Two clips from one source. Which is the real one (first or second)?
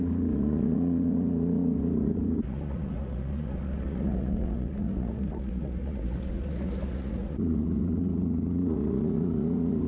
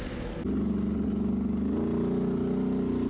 second